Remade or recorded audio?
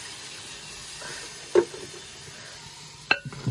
recorded